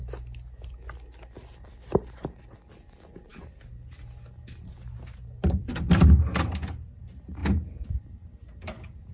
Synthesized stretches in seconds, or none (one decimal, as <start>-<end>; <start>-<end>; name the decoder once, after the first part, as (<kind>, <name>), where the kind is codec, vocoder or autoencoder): none